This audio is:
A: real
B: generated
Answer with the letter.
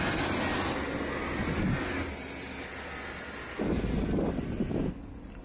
A